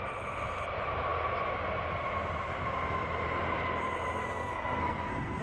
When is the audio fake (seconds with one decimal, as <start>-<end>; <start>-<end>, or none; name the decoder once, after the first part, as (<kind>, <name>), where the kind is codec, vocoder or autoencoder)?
4.2-5.4 (codec, SNAC)